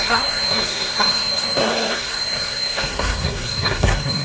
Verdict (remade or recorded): remade